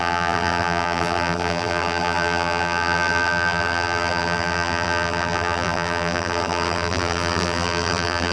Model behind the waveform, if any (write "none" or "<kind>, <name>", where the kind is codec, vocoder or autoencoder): vocoder, BigVGAN v2